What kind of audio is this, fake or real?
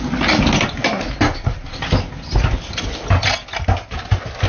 real